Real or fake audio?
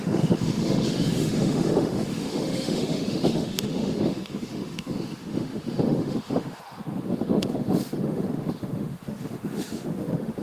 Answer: fake